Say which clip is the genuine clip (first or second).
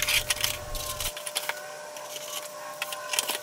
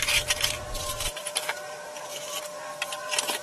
first